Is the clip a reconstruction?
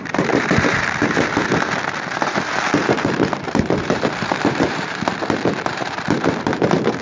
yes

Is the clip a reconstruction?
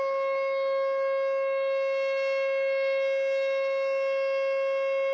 no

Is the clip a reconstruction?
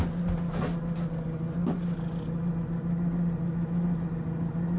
no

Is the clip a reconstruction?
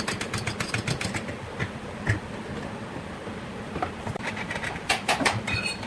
no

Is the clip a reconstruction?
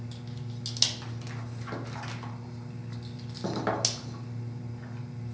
no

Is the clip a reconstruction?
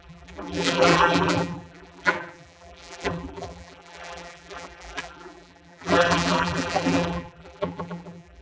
yes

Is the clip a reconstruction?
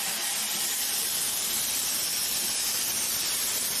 yes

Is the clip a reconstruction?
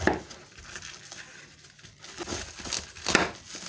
no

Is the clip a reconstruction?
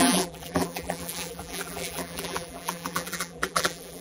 yes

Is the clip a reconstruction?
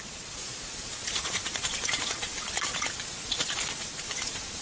yes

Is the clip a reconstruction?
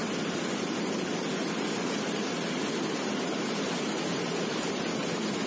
no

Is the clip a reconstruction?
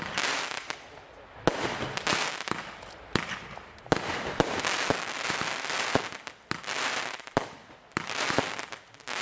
no